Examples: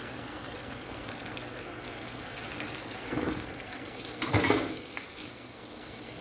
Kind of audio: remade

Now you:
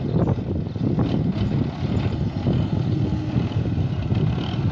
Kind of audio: recorded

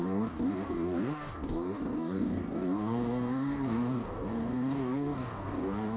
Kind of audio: remade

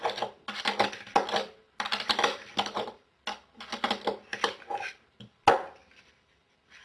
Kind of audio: recorded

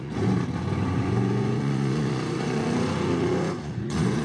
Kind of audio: remade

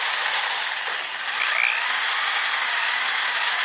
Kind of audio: recorded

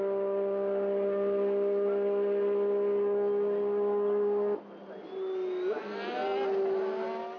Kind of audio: recorded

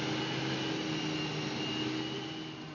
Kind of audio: recorded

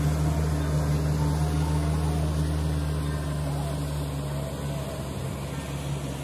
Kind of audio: recorded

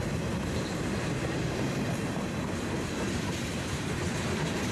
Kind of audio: remade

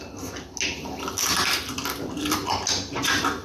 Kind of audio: recorded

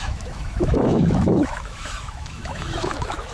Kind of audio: remade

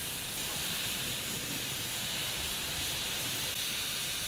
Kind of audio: remade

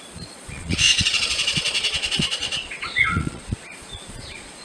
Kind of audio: remade